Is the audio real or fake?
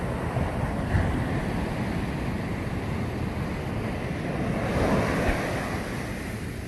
real